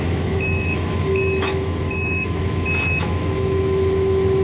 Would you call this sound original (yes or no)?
no